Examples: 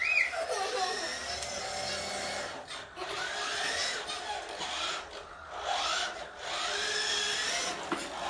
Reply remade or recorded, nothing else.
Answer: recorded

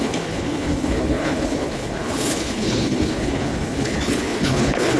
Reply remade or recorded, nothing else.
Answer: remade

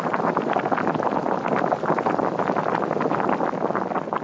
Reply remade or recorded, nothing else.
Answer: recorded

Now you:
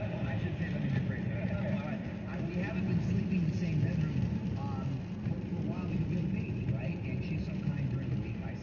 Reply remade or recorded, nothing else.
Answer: recorded